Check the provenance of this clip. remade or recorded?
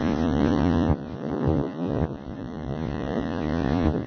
remade